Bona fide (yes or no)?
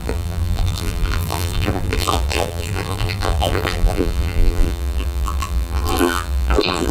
no